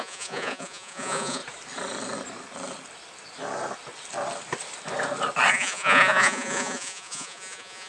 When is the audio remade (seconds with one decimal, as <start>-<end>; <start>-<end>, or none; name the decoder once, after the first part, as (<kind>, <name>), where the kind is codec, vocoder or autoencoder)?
0.0-1.4 (vocoder, Vocos); 5.5-7.9